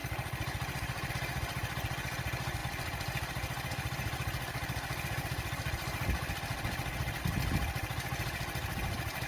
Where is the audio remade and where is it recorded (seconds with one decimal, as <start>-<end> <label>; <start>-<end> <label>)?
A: 0.0-9.3 recorded